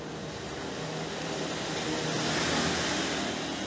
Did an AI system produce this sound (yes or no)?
no